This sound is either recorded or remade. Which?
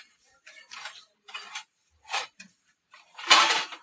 remade